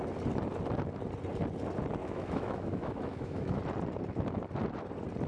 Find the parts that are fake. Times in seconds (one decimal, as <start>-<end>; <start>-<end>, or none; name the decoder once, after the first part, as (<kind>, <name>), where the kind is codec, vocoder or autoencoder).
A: 2.0-3.6 (autoencoder, DAC-VAE)